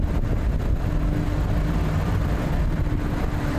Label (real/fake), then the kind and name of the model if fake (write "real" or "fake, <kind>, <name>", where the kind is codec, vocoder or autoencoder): real